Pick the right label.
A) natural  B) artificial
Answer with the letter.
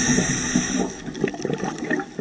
A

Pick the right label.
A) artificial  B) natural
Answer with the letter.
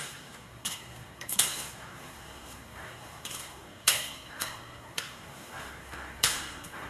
A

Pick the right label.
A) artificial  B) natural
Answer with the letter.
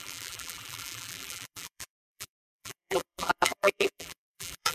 A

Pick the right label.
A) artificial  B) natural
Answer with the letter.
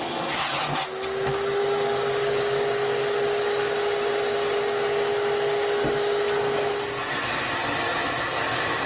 B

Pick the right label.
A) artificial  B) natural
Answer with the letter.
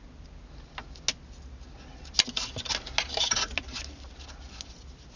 B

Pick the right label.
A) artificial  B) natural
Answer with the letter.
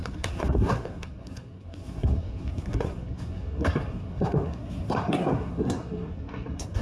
A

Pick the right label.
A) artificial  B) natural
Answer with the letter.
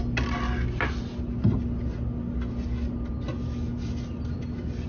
B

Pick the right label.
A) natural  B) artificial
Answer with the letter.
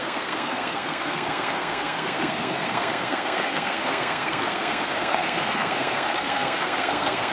B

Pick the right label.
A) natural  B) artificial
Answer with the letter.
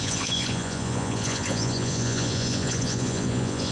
B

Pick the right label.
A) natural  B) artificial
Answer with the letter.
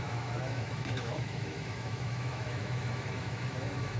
B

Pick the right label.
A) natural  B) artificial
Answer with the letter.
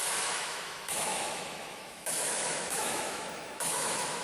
B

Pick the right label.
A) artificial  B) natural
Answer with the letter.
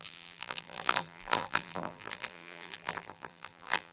A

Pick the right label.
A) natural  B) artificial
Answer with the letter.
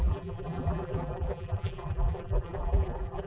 B